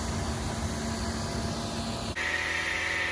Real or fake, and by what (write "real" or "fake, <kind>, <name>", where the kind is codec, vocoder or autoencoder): real